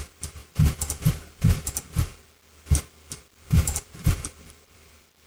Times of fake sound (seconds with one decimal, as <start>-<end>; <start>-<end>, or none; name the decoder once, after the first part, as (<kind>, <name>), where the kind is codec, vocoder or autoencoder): 0.0-2.1 (vocoder, BigVGAN v2); 3.2-5.3